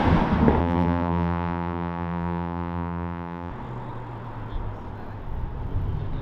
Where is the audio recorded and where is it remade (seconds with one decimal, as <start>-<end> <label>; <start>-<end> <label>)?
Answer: 0.0-0.6 recorded; 0.6-3.5 remade; 3.5-6.2 recorded